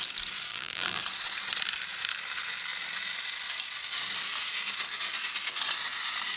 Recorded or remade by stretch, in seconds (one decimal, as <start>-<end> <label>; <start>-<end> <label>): 0.0-0.5 recorded; 0.5-1.0 remade; 1.0-6.4 recorded